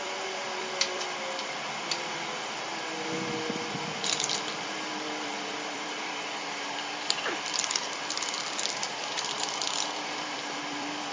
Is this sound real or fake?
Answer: fake